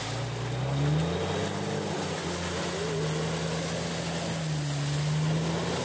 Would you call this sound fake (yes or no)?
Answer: no